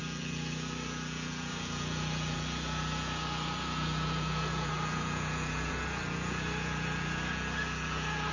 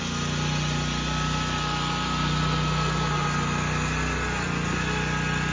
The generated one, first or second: first